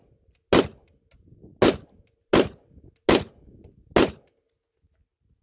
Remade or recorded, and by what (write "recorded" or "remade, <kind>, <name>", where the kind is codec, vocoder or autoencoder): recorded